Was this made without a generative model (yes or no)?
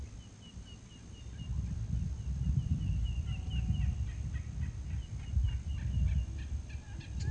yes